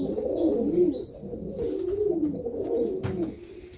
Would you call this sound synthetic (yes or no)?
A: no